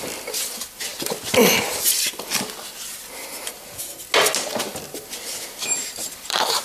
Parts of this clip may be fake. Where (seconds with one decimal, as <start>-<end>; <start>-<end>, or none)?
0.9-3.0; 4.7-6.6